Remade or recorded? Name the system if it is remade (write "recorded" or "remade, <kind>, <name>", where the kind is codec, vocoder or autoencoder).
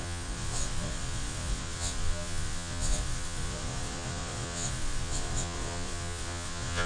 remade, vocoder, Vocos